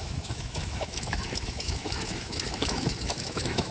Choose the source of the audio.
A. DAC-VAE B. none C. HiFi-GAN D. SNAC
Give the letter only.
A